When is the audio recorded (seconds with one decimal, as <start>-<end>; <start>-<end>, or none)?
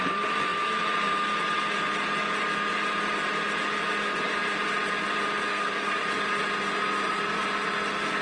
0.0-5.5; 6.0-8.2